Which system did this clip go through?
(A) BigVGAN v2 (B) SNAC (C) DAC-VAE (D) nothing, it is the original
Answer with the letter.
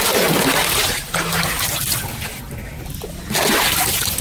D